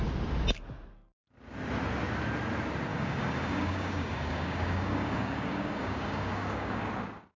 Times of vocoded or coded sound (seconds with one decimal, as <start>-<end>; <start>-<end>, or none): 2.9-6.9